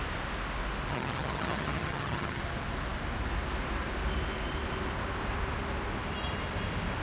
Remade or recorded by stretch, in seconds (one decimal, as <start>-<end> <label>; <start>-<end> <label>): 0.0-0.9 recorded; 0.9-2.4 remade; 2.4-7.0 recorded